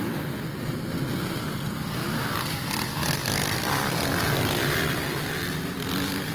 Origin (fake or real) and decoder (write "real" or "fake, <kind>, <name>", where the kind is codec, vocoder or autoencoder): real